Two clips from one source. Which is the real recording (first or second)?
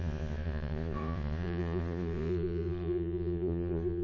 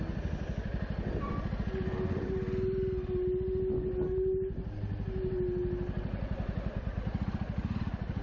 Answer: second